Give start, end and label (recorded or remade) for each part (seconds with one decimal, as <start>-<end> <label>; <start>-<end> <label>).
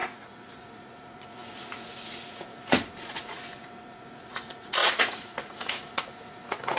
0.0-6.8 remade